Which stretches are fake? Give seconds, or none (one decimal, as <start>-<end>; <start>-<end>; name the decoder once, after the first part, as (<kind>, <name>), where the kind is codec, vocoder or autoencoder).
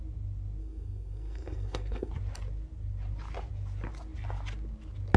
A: 0.6-2.1 (codec, SNAC)